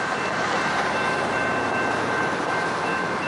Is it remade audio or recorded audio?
remade